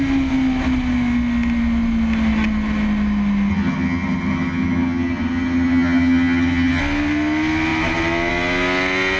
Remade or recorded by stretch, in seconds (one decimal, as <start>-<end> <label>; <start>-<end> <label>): 0.0-3.5 recorded; 3.5-6.8 remade; 6.8-9.2 recorded